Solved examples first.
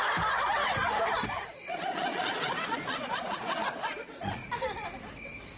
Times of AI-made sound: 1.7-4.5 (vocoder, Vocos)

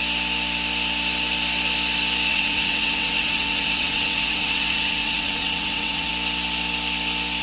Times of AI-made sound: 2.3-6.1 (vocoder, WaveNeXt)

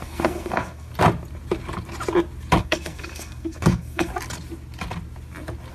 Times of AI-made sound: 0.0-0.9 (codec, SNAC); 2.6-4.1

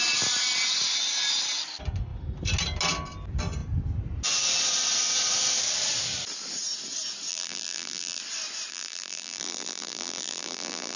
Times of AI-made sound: 7.3-8.2 (vocoder, BigVGAN v2); 8.7-11.0

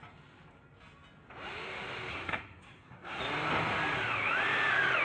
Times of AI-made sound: 2.1-3.2 (codec, SNAC)

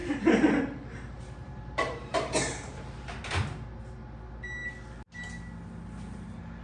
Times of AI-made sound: 0.0-0.5 (vocoder, BigVGAN v2); 1.4-3.2

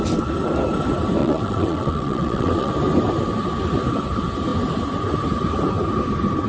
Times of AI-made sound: 1.2-2.7 (vocoder, WaveNeXt)

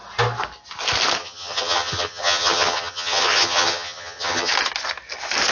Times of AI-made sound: 1.2-4.5 (vocoder, HiFi-GAN)